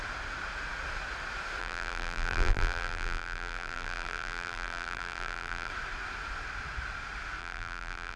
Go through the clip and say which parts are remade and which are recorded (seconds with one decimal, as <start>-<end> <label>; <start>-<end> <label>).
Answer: 0.0-1.6 recorded; 1.6-5.7 remade; 5.7-7.4 recorded; 7.4-8.2 remade